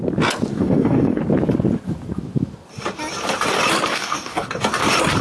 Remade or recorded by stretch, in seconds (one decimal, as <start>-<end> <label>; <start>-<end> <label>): 0.0-0.5 recorded; 0.5-1.2 remade; 1.2-3.9 recorded; 3.9-4.6 remade; 4.6-5.2 recorded